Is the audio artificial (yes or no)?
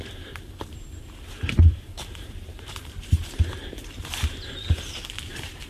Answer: yes